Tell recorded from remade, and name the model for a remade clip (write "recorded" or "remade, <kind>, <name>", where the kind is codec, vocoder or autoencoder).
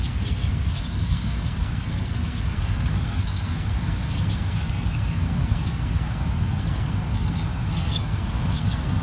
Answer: remade, codec, SNAC